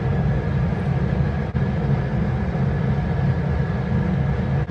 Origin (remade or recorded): recorded